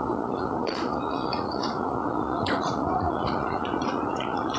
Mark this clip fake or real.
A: fake